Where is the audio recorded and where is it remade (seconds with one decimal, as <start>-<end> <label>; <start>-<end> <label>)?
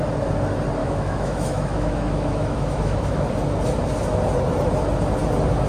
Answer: 0.0-0.8 recorded; 0.8-3.3 remade; 3.3-5.7 recorded